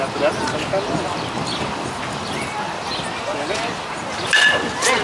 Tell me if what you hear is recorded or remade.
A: recorded